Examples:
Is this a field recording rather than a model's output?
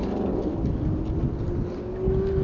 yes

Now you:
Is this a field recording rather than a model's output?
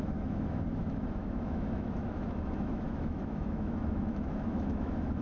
no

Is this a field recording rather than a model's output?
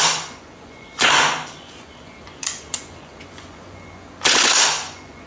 no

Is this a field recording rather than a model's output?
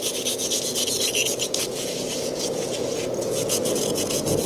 no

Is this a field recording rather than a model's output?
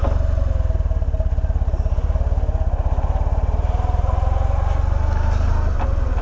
yes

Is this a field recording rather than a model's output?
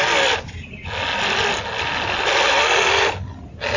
yes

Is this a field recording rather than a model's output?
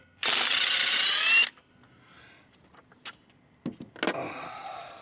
yes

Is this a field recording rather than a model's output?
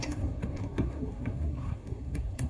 no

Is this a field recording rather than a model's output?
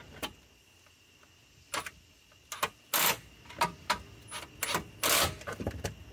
yes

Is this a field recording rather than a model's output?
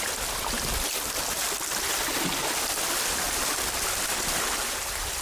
yes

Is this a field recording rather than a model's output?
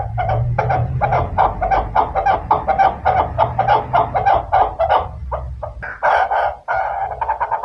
yes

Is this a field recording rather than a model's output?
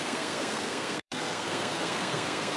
no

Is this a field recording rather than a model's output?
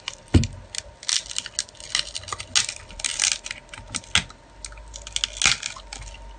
yes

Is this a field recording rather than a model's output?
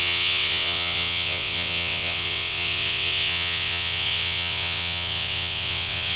no